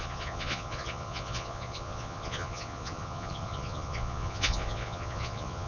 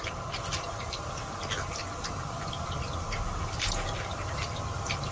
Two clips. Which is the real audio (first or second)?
second